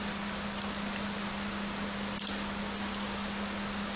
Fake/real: real